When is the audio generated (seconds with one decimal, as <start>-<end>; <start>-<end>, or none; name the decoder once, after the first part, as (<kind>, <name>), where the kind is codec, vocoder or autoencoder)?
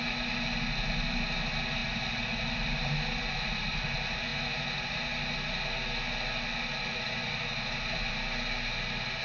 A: none